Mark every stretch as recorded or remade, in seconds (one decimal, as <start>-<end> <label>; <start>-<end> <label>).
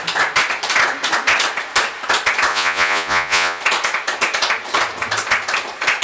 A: 0.0-2.5 recorded; 2.5-3.6 remade; 3.6-6.0 recorded